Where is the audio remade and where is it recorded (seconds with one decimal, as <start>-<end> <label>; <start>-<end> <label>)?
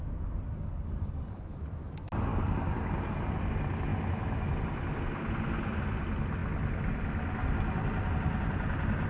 0.0-0.7 recorded; 0.7-1.4 remade; 1.4-2.3 recorded; 2.3-2.9 remade; 2.9-9.1 recorded